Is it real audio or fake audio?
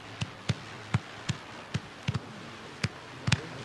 real